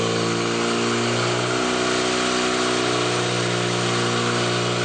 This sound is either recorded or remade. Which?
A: recorded